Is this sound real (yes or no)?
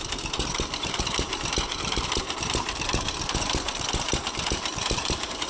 no